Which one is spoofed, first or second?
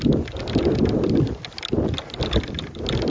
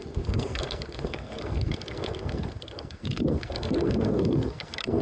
second